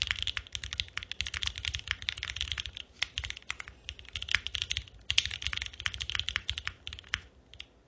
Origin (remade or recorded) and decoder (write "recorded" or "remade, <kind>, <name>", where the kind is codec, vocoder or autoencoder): recorded